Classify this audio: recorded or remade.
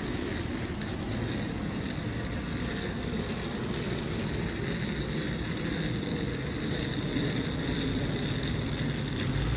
recorded